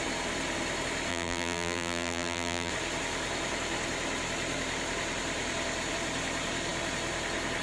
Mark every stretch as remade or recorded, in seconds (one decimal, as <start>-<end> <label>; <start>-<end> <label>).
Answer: 0.0-1.1 recorded; 1.1-2.7 remade; 2.7-7.6 recorded